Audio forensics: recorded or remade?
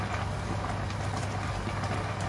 recorded